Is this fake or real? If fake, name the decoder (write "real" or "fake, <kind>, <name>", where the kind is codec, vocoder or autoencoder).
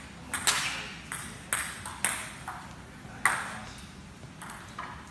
real